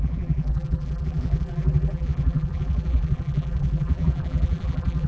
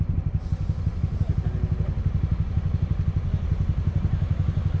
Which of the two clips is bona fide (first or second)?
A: second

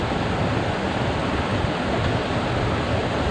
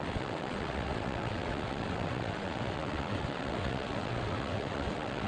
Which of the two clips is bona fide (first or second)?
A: first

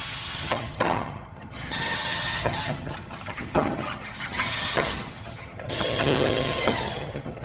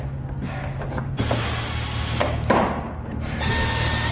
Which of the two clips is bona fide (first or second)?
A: second